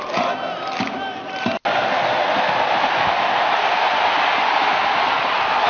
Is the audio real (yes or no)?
yes